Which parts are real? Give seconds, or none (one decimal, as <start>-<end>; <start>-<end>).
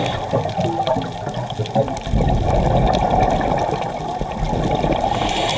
0.0-5.6